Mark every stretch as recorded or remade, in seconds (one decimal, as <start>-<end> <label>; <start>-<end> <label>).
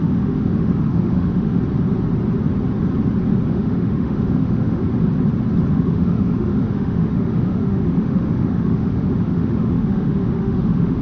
0.0-1.6 remade; 1.6-3.5 recorded; 3.5-4.8 remade; 4.8-5.7 recorded; 5.7-11.0 remade